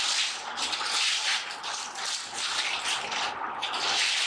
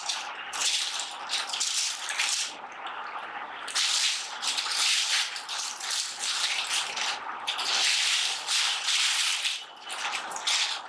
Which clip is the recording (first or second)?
first